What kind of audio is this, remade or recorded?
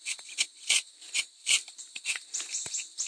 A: recorded